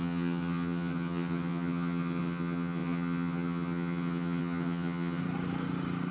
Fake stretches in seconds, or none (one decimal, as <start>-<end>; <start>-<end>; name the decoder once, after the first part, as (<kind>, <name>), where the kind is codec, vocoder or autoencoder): 0.0-5.2 (vocoder, HiFi-GAN)